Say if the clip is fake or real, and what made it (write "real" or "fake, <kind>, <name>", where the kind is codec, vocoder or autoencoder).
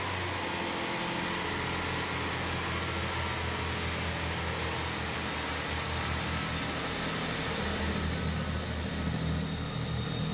real